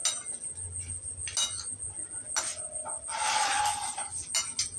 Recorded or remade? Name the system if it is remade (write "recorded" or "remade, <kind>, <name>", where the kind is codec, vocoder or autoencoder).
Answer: recorded